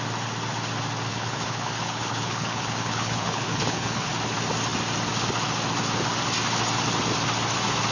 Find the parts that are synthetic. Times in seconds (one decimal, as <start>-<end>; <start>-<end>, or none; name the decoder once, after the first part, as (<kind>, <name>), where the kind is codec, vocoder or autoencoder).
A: 1.1-4.1 (codec, HILCodec)